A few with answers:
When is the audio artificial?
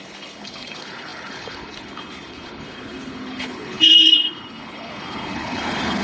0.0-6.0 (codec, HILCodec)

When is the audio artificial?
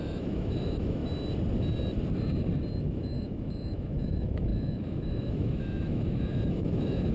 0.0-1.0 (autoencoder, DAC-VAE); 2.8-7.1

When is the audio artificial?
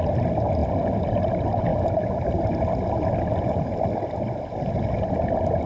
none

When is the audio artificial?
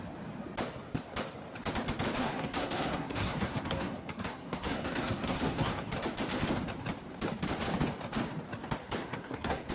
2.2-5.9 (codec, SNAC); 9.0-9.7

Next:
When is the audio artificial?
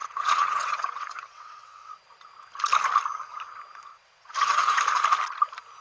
0.0-1.9 (vocoder, WaveNeXt); 3.9-4.8